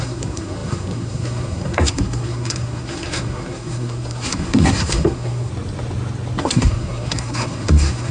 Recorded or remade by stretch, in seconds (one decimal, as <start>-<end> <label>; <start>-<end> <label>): 0.0-5.5 remade; 5.5-6.4 recorded; 6.4-8.1 remade